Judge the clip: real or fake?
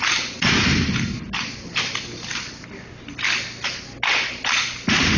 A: real